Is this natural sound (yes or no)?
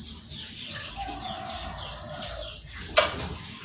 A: yes